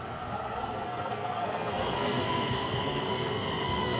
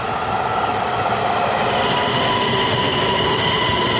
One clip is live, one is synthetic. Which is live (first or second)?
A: second